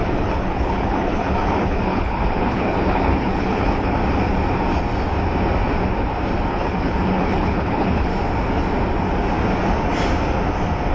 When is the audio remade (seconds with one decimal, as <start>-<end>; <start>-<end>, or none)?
0.0-4.0; 6.5-8.1